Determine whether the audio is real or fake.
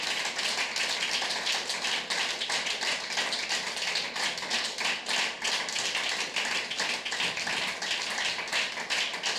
real